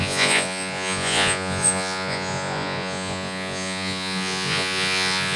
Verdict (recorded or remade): remade